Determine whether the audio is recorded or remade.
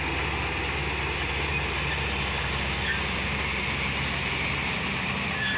recorded